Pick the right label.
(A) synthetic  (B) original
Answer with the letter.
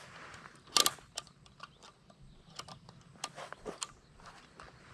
B